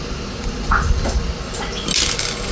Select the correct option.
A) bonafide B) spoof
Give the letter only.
A